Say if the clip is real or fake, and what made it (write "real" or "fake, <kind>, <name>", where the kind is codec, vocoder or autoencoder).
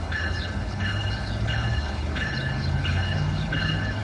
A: fake, codec, HILCodec